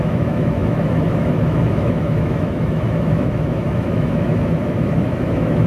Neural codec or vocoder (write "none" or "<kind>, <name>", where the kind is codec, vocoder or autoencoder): autoencoder, DAC-VAE